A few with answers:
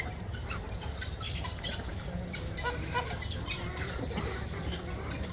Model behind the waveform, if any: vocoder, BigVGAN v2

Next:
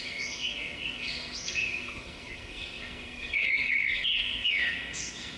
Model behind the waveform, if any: codec, SNAC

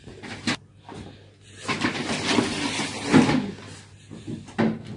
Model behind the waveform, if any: none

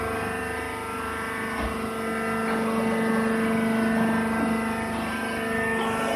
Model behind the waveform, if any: none